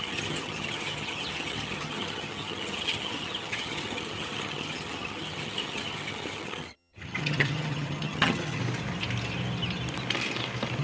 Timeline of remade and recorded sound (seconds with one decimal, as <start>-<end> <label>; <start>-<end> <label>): 0.0-8.6 remade; 8.6-10.8 recorded